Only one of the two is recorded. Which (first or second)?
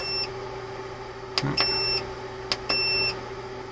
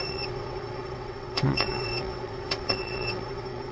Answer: first